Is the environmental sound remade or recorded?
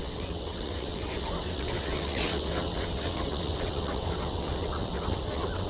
remade